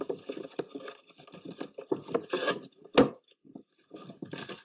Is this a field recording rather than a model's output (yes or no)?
yes